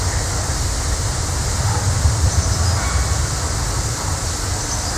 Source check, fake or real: real